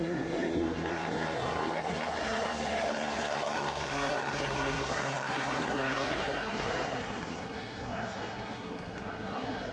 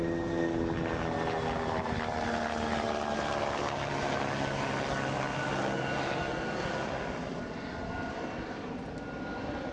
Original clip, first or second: second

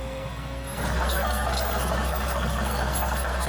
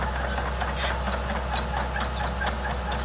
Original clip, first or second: second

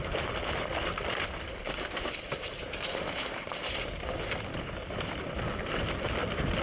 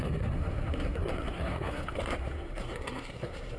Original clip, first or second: first